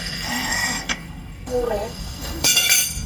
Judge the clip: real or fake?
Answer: fake